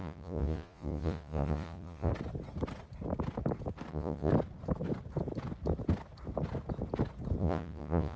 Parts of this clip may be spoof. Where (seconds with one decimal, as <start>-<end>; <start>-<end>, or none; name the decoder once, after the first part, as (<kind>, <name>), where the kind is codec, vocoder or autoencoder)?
0.0-2.1 (vocoder, Vocos); 3.9-4.3; 7.4-8.2